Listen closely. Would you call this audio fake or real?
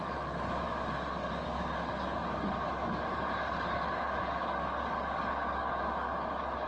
fake